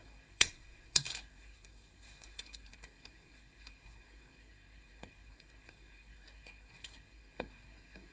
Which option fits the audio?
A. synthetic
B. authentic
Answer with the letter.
A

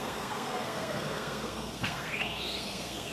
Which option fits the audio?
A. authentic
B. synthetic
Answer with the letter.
B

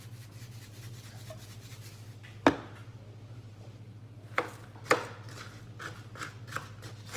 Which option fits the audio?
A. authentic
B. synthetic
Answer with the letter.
A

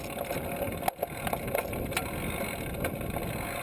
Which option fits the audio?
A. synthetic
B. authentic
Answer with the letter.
B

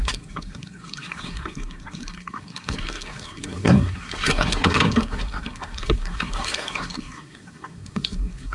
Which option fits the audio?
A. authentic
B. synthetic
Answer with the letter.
B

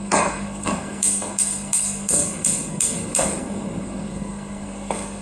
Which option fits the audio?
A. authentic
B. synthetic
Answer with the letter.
B